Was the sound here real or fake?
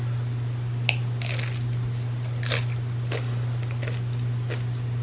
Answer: real